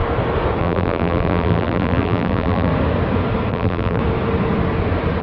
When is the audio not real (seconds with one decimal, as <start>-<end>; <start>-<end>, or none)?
0.6-2.7; 3.5-4.0